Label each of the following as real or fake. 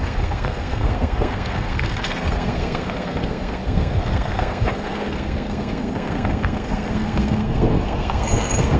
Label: fake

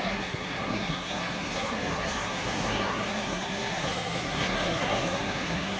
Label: fake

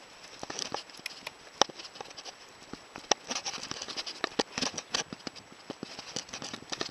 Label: real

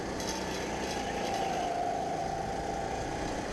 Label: real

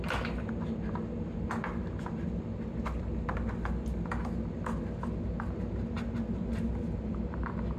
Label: real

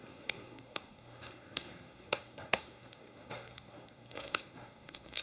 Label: fake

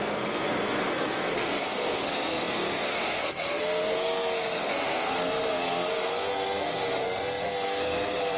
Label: fake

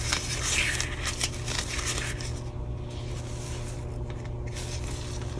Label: real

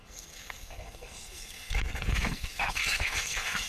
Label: fake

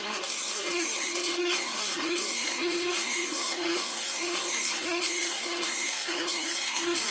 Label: fake